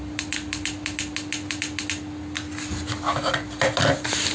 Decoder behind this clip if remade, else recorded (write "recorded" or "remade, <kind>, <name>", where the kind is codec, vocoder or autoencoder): recorded